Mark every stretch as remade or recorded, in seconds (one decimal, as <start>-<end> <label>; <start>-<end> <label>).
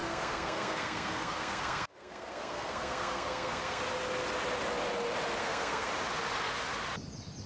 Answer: 0.0-3.8 remade; 3.8-5.4 recorded; 5.4-5.9 remade; 5.9-7.5 recorded